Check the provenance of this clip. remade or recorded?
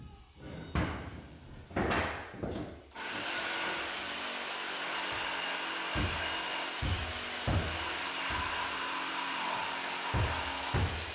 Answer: recorded